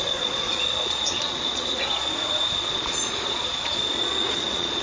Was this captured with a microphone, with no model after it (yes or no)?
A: no